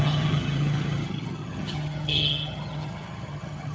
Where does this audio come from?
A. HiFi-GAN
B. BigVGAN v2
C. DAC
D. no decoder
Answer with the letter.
A